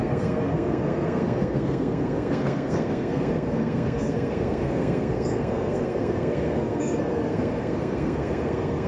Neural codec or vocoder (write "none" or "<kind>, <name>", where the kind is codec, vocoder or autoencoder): codec, SNAC